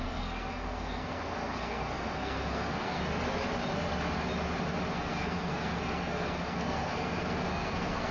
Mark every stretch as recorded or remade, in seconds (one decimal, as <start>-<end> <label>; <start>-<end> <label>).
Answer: 0.0-3.0 remade; 3.0-4.9 recorded; 4.9-8.1 remade